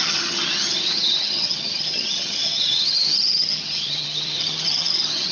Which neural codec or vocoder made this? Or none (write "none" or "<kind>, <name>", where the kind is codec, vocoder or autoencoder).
vocoder, HiFi-GAN